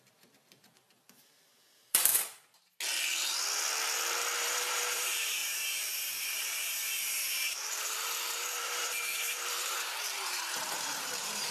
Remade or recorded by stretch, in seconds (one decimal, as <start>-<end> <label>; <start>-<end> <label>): 0.0-2.1 remade; 2.1-4.4 recorded; 4.4-11.5 remade